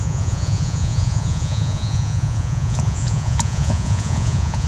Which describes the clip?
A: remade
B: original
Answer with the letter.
A